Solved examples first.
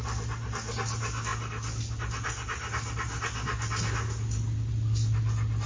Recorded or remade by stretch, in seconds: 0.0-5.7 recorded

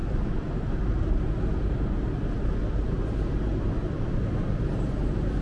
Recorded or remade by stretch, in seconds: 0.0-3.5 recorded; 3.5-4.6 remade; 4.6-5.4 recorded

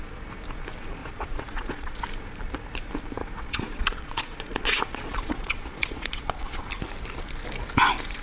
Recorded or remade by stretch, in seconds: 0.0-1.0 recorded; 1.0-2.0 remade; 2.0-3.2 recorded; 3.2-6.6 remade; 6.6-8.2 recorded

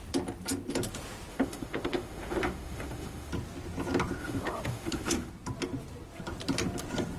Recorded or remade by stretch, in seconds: 0.0-1.3 recorded; 1.3-3.3 remade; 3.3-4.2 recorded; 4.2-5.3 remade; 5.3-7.2 recorded

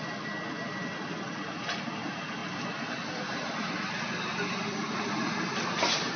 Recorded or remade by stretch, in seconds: 0.0-6.2 recorded

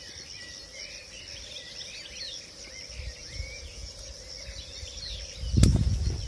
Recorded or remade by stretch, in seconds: 0.0-3.2 recorded; 3.2-3.9 remade; 3.9-6.3 recorded